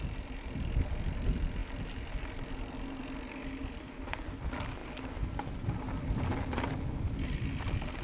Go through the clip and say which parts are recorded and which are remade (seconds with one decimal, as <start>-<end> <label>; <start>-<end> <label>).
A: 0.0-8.0 recorded